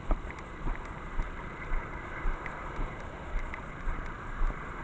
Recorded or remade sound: remade